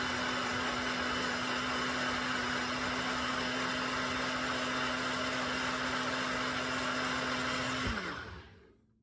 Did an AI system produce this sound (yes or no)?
no